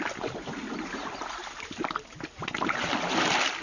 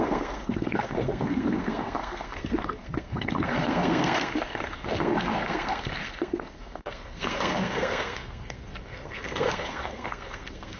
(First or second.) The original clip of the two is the first